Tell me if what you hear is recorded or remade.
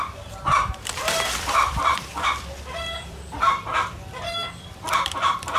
remade